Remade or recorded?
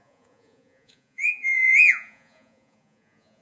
remade